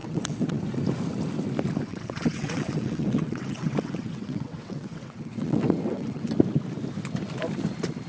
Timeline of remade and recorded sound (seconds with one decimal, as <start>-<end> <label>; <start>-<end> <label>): 0.0-0.6 remade; 0.6-1.9 recorded; 1.9-6.3 remade; 6.3-8.1 recorded